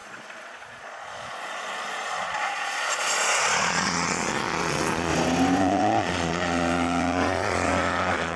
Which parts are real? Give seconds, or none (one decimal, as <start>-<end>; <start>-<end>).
5.1-5.6